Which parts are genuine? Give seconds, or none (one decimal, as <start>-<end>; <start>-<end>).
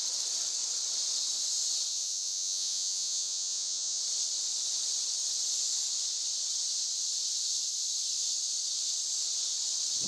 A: 0.0-1.9; 4.0-10.1